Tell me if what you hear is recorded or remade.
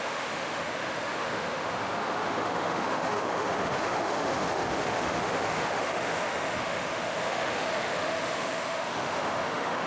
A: remade